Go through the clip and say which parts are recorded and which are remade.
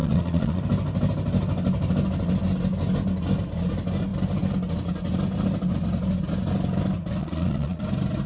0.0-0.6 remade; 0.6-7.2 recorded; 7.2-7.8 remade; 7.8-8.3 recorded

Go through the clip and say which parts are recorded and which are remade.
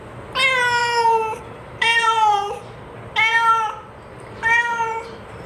0.0-0.8 recorded; 0.8-2.8 remade; 2.8-3.3 recorded; 3.3-4.2 remade; 4.2-4.7 recorded; 4.7-5.5 remade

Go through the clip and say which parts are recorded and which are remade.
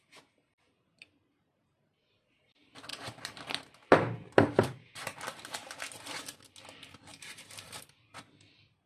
0.0-2.9 recorded; 2.9-5.7 remade; 5.7-7.1 recorded; 7.1-8.0 remade; 8.0-8.9 recorded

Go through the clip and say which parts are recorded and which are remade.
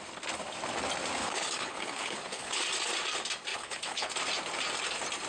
0.0-1.2 recorded; 1.2-2.6 remade; 2.6-3.5 recorded; 3.5-4.1 remade; 4.1-5.3 recorded